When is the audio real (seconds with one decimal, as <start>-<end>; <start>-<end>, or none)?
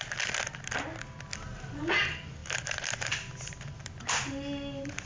0.0-5.1